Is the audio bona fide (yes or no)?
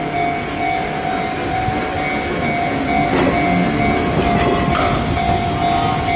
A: yes